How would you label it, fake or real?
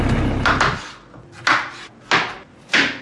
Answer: real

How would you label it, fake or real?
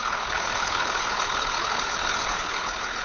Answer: fake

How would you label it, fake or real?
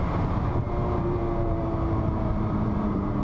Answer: fake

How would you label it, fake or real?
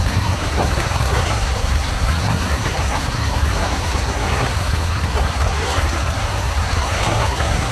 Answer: fake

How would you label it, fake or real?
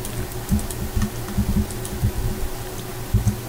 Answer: real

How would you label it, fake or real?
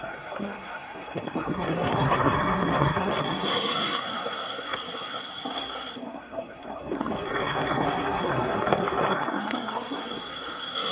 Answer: fake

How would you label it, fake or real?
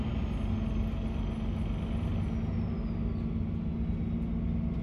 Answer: real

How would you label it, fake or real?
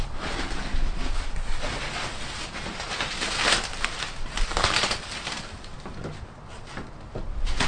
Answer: real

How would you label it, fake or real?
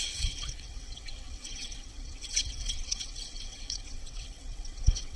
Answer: fake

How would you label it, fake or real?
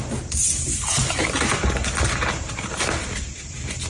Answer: real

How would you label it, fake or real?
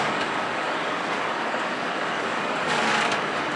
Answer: fake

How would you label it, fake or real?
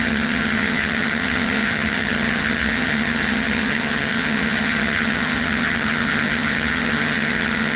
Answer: fake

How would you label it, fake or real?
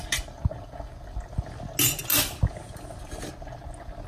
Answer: real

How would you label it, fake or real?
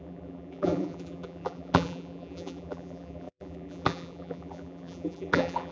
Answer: fake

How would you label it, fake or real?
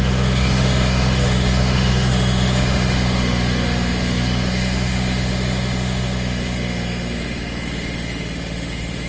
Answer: fake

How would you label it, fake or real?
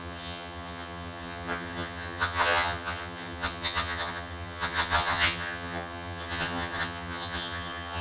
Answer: fake